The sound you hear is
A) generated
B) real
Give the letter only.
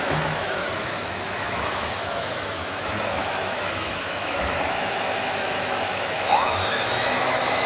A